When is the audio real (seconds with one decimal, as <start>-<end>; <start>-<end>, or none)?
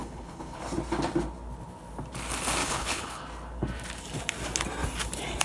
0.6-2.6; 3.2-5.4